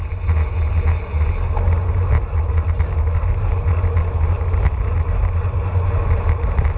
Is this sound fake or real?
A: real